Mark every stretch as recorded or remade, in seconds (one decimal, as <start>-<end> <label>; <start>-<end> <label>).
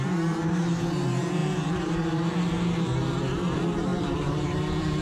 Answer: 0.0-5.0 remade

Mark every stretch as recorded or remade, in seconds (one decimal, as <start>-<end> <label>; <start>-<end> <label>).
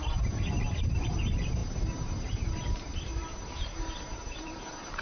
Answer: 0.0-5.0 remade